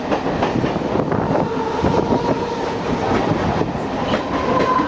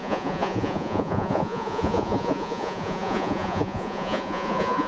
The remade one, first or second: second